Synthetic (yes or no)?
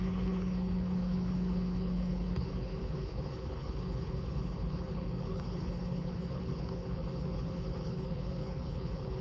yes